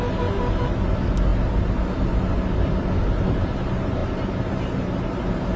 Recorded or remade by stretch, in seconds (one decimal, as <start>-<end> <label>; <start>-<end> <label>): 0.0-5.6 recorded